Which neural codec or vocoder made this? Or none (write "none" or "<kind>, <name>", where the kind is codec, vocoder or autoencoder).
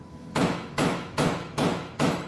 autoencoder, DAC-VAE